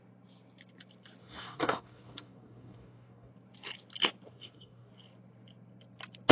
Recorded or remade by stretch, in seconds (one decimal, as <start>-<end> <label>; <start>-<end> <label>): 0.0-1.2 recorded; 1.2-3.3 remade; 3.3-4.3 recorded; 4.3-4.9 remade; 4.9-6.3 recorded